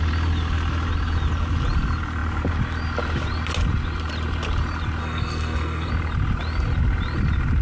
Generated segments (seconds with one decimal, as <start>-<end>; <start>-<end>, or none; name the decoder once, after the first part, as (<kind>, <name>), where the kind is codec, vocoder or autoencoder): 5.0-5.9 (codec, SNAC)